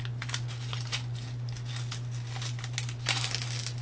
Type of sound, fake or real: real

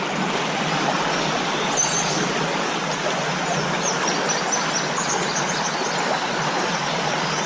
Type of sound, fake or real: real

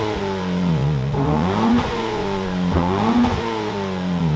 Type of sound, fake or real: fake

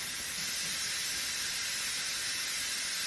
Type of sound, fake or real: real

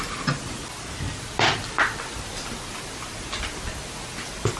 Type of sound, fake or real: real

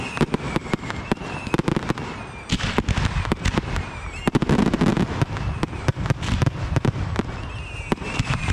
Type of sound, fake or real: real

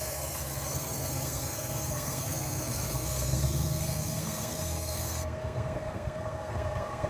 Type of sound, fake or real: fake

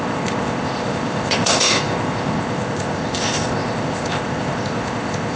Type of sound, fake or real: fake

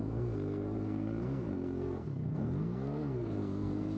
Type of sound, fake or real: fake